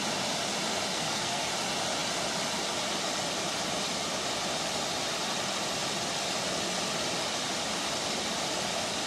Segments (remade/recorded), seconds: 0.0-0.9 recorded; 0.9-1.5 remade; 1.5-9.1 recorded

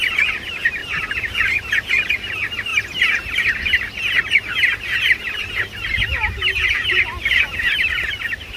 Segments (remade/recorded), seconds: 0.0-8.6 recorded

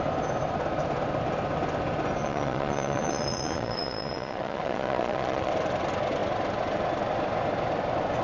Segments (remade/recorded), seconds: 0.0-2.2 recorded; 2.2-5.5 remade; 5.5-8.2 recorded

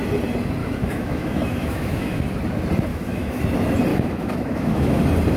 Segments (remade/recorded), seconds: 0.0-0.6 recorded; 0.6-2.2 remade; 2.2-2.9 recorded; 2.9-3.4 remade; 3.4-3.9 recorded; 3.9-5.0 remade; 5.0-5.4 recorded

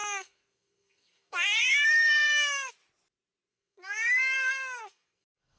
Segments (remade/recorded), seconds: 0.0-2.7 remade; 2.7-3.5 recorded; 3.5-5.6 remade

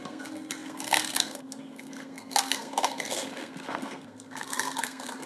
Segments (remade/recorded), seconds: 0.0-5.3 remade